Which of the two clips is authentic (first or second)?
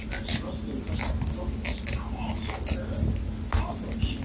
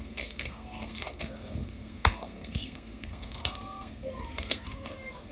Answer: first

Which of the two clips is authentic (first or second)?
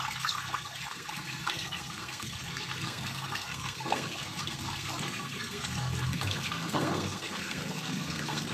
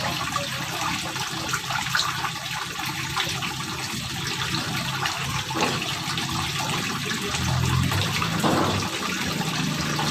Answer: second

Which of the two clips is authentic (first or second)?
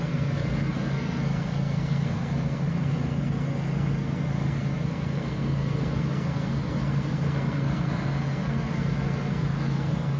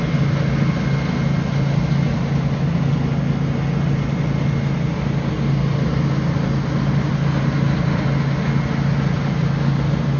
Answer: second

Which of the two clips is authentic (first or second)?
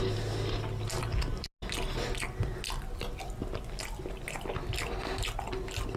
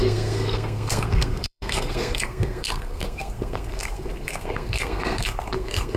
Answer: first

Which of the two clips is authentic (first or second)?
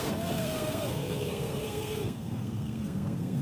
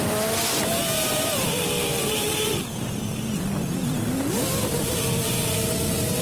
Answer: second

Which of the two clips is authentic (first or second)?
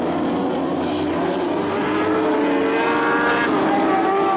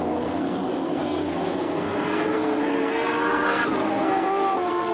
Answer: first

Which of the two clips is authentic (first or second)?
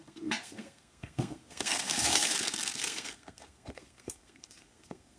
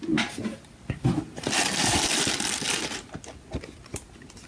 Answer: second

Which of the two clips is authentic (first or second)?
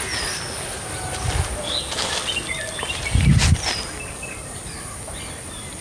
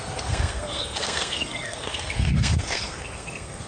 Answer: first